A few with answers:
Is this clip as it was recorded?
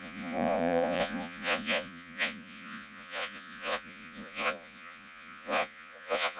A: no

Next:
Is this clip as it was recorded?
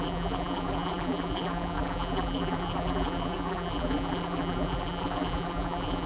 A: no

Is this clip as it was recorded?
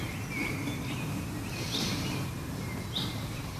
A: yes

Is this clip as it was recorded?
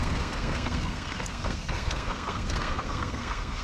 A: no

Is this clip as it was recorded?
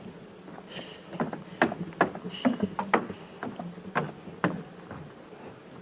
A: yes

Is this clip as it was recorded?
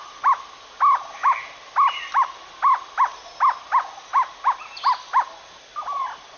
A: yes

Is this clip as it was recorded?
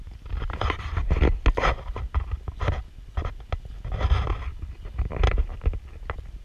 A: yes